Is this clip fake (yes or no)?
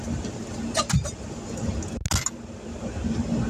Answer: no